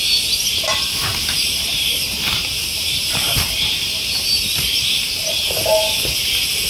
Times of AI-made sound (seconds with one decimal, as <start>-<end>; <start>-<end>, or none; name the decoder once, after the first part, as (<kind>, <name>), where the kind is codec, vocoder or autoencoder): 1.1-4.8 (vocoder, BigVGAN v2)